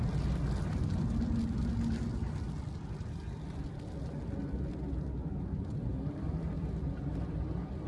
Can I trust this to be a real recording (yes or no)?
yes